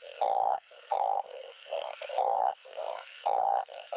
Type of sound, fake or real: fake